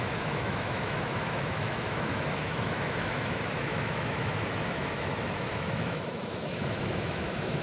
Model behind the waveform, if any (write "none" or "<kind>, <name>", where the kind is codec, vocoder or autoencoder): autoencoder, DAC-VAE